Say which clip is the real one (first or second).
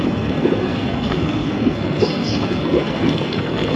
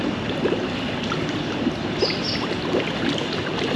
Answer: second